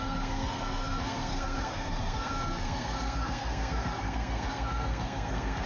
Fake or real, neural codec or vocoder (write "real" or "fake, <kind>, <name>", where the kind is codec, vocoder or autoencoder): fake, codec, SNAC